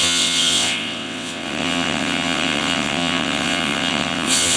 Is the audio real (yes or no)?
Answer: no